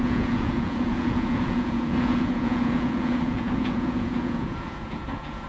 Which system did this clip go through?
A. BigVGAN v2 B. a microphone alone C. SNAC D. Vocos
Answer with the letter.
D